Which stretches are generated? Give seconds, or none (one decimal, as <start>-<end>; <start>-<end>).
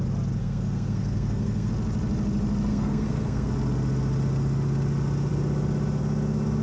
0.4-1.7; 2.7-3.5